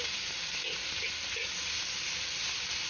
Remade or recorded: recorded